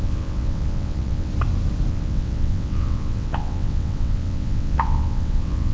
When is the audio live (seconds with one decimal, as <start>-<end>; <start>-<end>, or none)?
1.3-1.9